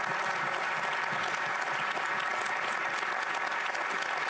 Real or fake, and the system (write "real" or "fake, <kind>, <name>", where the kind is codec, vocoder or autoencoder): real